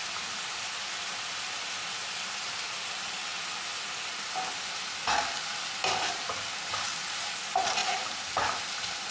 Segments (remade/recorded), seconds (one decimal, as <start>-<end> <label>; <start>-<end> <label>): 0.0-9.1 recorded